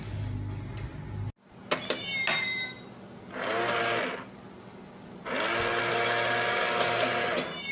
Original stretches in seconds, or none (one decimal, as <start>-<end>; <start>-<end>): 0.0-7.7